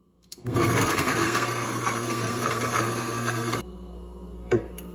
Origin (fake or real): fake